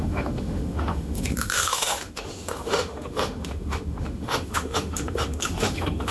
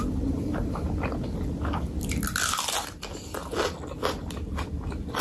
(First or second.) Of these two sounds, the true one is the second